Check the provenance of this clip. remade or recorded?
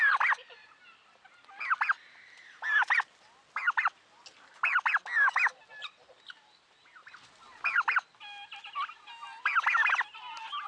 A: recorded